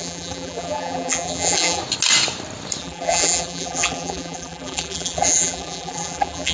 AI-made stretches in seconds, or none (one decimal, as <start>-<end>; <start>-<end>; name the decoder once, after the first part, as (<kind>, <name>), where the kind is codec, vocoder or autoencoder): 0.0-1.8 (vocoder, BigVGAN v2); 2.8-6.5